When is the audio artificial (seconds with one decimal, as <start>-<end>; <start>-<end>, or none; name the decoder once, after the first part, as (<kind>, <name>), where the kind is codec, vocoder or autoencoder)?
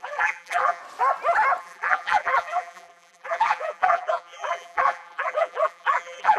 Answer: 0.0-0.8 (vocoder, BigVGAN v2); 1.6-6.4